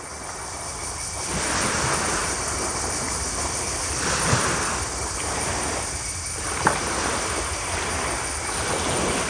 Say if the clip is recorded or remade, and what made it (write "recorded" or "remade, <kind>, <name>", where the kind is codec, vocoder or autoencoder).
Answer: recorded